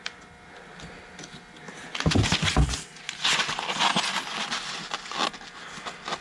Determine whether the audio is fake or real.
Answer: real